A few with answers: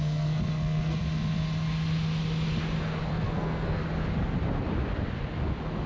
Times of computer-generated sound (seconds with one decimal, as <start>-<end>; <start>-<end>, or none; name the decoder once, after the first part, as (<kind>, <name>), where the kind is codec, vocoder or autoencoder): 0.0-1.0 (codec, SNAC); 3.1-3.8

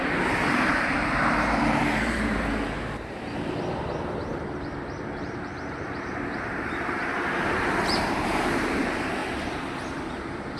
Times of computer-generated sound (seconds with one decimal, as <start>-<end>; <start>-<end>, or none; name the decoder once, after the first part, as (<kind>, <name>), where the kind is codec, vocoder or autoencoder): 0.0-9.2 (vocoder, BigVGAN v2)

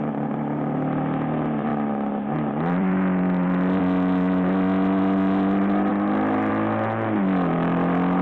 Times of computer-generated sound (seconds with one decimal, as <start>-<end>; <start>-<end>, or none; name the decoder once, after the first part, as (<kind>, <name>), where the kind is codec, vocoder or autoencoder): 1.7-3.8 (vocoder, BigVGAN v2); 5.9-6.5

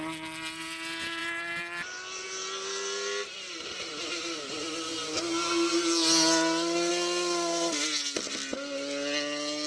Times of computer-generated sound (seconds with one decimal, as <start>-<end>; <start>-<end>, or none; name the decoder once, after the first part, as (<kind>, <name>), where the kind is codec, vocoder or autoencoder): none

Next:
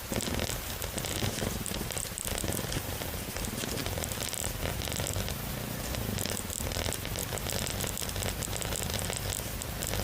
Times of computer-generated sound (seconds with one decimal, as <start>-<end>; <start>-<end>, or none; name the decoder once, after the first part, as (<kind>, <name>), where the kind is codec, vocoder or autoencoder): none

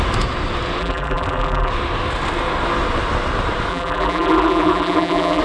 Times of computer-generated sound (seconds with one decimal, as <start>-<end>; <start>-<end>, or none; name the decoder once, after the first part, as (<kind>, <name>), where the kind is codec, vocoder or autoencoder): 0.8-1.7 (vocoder, BigVGAN v2); 3.7-5.4

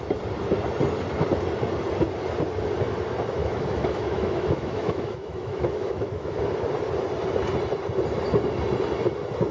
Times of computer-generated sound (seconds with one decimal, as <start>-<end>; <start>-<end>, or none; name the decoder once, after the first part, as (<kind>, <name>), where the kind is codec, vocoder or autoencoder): 3.4-6.4 (autoencoder, DAC-VAE)

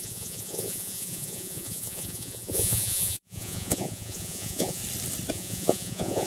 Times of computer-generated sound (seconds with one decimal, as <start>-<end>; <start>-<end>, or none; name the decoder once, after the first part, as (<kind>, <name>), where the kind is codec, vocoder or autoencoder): 0.0-4.8 (vocoder, Vocos); 5.3-6.3